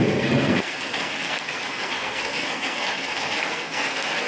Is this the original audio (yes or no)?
no